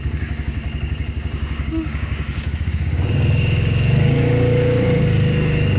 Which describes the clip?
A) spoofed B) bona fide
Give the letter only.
A